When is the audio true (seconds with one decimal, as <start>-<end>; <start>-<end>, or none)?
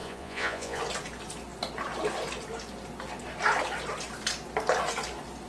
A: 0.8-5.5